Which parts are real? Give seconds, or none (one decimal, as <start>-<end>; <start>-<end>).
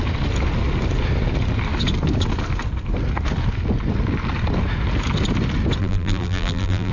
0.0-5.8